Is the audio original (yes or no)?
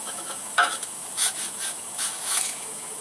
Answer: no